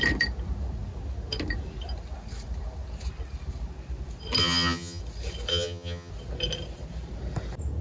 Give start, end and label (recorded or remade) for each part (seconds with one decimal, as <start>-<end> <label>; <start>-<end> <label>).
0.0-4.4 recorded; 4.4-5.0 remade; 5.0-5.5 recorded; 5.5-6.1 remade; 6.1-7.8 recorded